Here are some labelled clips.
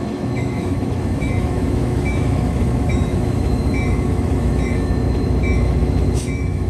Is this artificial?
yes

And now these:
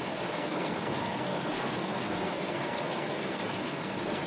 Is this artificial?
yes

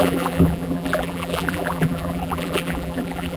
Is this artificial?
yes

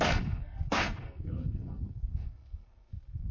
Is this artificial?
yes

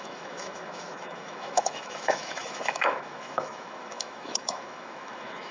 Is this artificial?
yes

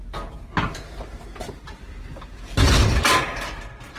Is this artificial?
no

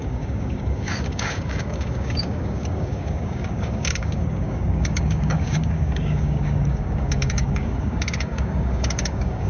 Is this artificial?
yes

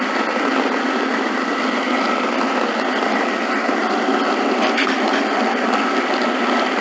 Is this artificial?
no